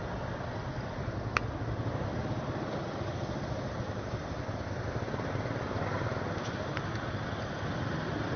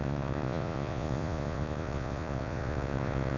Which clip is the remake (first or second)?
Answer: second